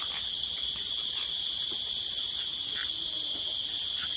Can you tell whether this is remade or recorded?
recorded